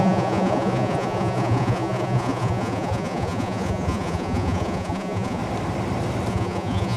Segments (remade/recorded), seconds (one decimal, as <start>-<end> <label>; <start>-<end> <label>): 0.0-5.4 remade; 5.4-6.3 recorded; 6.3-7.0 remade